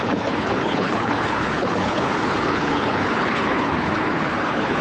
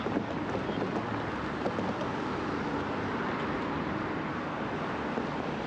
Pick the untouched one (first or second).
second